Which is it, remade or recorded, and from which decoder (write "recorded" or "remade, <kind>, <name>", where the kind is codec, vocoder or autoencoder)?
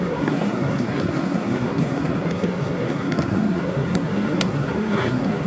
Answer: remade, codec, SNAC